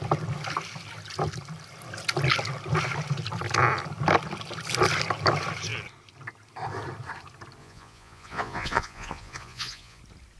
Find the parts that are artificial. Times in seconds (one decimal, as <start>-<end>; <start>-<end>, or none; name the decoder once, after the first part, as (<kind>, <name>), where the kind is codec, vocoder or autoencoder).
7.6-10.0 (vocoder, Vocos)